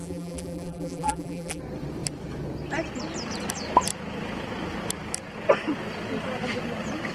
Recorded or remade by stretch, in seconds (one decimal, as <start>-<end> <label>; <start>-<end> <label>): 0.0-1.6 remade; 1.6-7.1 recorded

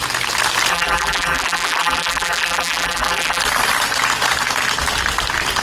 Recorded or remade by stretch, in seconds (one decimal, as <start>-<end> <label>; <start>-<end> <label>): 0.0-0.7 recorded; 0.7-3.4 remade; 3.4-5.6 recorded

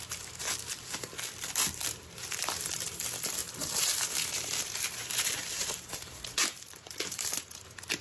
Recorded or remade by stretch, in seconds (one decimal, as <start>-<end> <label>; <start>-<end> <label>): 0.0-0.4 remade; 0.4-2.0 recorded; 2.0-8.0 remade